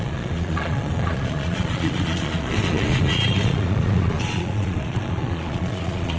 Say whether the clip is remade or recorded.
remade